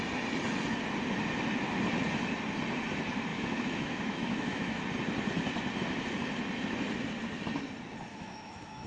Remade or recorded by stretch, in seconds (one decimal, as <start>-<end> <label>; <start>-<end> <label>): 0.0-3.3 recorded; 3.3-4.8 remade; 4.8-8.1 recorded; 8.1-8.9 remade